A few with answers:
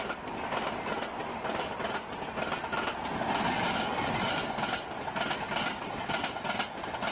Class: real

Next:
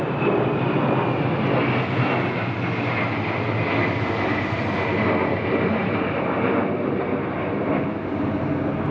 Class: real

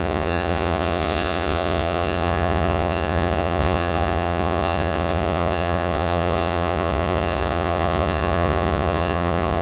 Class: fake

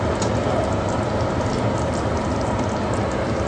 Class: real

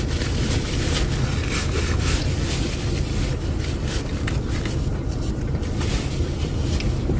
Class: real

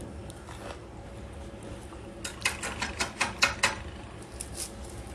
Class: real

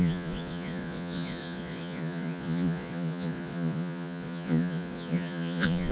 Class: fake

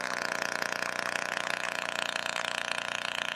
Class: fake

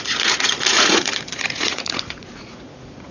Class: fake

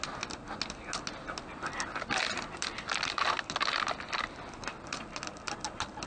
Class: real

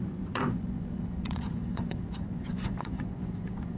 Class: fake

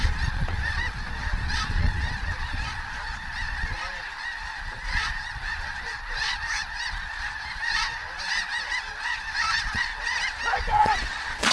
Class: fake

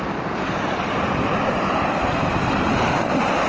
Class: real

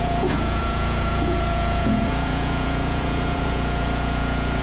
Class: fake